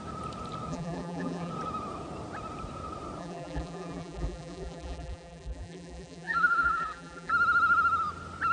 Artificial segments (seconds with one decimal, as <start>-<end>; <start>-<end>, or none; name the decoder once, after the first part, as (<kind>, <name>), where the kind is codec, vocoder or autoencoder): 0.7-1.5 (vocoder, BigVGAN v2); 3.2-7.3